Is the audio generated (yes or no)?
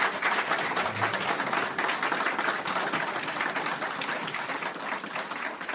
no